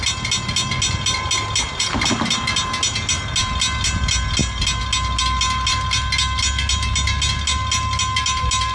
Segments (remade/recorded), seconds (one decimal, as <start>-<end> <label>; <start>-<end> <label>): 0.0-8.7 recorded